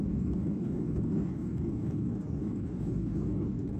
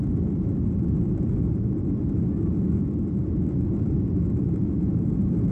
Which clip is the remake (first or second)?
first